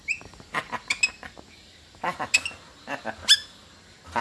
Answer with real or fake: real